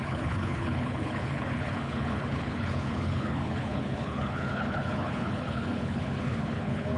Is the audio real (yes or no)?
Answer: no